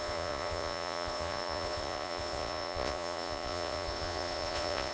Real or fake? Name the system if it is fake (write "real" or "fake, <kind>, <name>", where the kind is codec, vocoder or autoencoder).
fake, vocoder, Vocos